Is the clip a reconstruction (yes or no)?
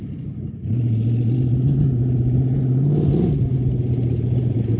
no